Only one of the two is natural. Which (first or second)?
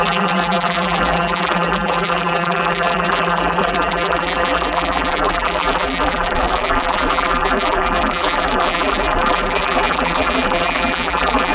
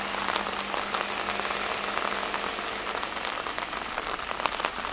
second